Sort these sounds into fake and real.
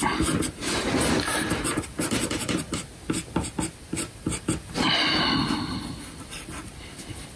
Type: fake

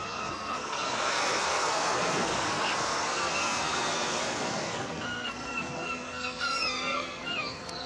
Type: fake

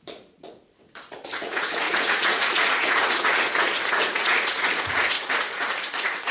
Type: fake